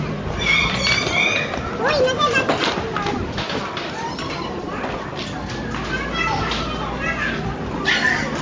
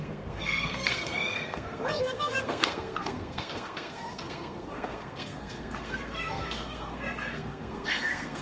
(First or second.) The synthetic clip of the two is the second